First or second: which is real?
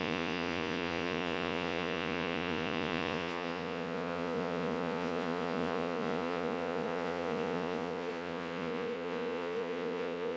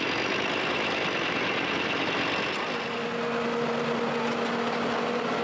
second